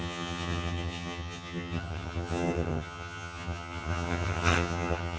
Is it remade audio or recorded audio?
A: remade